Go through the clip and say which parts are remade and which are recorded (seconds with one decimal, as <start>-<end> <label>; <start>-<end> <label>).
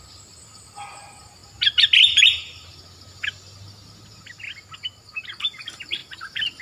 0.0-1.4 remade; 1.4-5.4 recorded; 5.4-6.6 remade